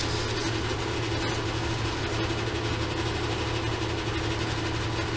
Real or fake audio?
real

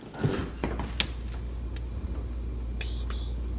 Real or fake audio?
real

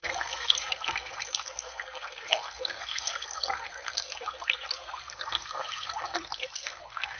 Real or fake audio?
fake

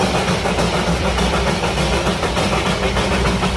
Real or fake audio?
real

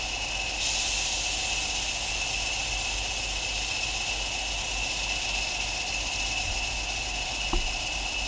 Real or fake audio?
real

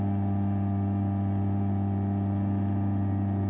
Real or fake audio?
real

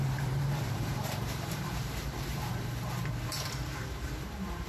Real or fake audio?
fake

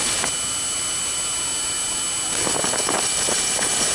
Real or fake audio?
real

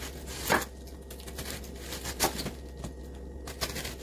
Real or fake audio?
real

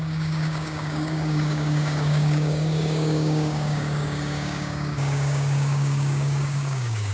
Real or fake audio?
fake